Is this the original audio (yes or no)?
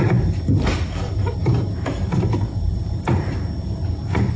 no